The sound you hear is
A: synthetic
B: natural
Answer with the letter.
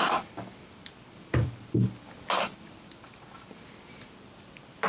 B